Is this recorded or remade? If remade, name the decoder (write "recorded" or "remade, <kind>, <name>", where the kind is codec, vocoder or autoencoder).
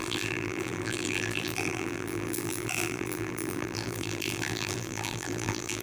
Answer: remade, vocoder, BigVGAN v2